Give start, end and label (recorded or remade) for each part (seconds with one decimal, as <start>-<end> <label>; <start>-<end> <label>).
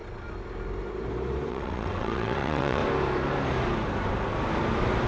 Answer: 0.0-1.5 recorded; 1.5-2.8 remade; 2.8-5.1 recorded